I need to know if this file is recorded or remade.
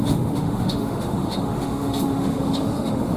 remade